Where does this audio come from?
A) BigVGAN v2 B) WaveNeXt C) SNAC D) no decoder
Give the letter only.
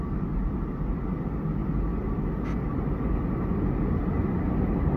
D